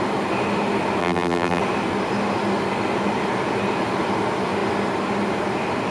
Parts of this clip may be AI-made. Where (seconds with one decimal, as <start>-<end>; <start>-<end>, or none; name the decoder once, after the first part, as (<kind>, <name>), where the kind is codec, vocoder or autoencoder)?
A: 1.0-1.6 (vocoder, BigVGAN v2)